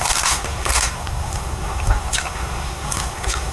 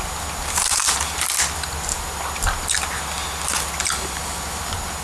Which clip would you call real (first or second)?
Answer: second